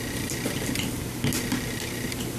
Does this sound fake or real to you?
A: real